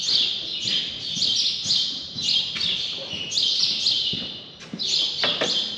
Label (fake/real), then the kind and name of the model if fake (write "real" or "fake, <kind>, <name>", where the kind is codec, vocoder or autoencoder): real